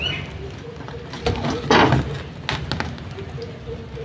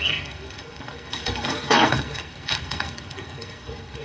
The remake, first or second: second